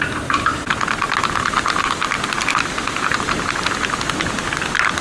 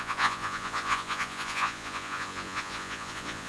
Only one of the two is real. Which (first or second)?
first